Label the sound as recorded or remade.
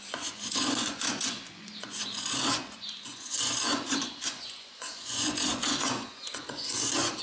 remade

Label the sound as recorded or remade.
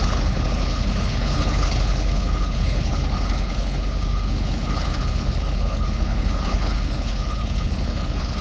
remade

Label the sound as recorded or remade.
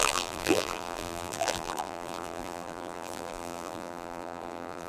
remade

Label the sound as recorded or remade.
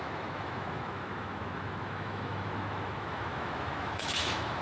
remade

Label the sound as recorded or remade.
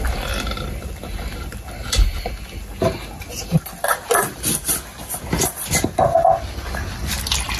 recorded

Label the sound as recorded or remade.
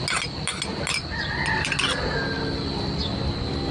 recorded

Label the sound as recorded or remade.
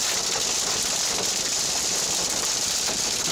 recorded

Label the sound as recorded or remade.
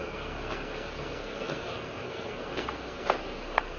remade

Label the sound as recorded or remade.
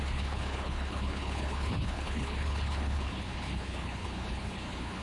remade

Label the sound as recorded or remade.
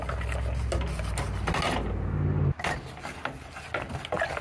recorded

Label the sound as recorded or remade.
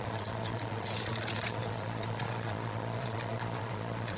remade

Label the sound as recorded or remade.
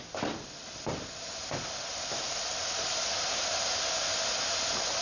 recorded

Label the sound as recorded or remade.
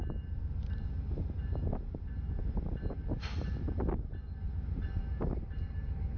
recorded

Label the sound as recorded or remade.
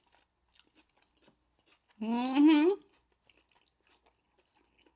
recorded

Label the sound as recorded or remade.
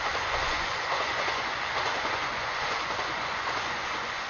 remade